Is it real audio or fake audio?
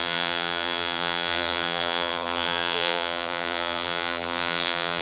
fake